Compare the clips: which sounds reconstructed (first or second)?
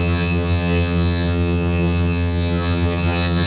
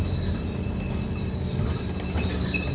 first